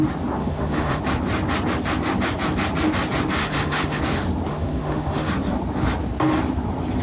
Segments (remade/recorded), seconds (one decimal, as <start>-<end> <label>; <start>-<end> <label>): 0.0-0.4 recorded; 0.4-1.0 remade; 1.0-3.4 recorded; 3.4-4.0 remade; 4.0-4.5 recorded; 4.5-5.3 remade; 5.3-7.0 recorded

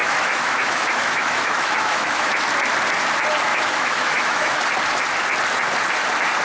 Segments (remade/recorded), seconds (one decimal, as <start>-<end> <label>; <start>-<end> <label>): 0.0-2.4 remade; 2.4-3.5 recorded; 3.5-4.6 remade; 4.6-6.4 recorded

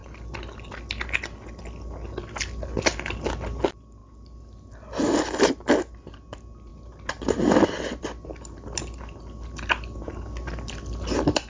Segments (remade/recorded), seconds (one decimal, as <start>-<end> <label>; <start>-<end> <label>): 0.0-11.5 recorded

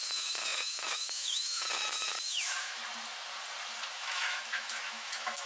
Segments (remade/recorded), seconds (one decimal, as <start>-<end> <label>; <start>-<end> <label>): 0.0-2.8 remade; 2.8-3.9 recorded; 3.9-5.5 remade

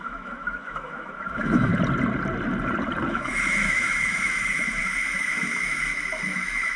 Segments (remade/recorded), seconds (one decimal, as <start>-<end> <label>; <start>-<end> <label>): 0.0-1.7 remade; 1.7-3.1 recorded; 3.1-6.8 remade